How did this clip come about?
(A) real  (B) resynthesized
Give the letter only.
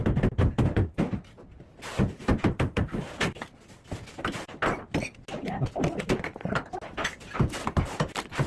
A